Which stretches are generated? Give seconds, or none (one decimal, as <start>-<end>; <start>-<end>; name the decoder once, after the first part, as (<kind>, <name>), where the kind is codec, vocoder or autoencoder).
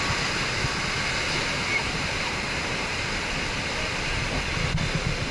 1.7-3.1 (vocoder, BigVGAN v2)